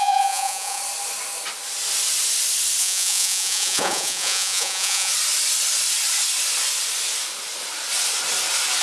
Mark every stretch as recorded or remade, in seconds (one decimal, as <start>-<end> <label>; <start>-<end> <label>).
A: 0.0-0.8 remade; 0.8-2.8 recorded; 2.8-5.1 remade; 5.1-8.8 recorded